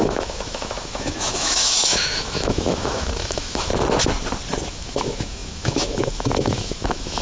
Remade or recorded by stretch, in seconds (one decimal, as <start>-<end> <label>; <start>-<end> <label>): 0.0-3.7 remade; 3.7-4.7 recorded; 4.7-7.2 remade